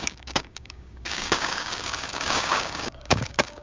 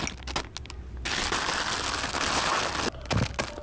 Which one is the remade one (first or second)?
first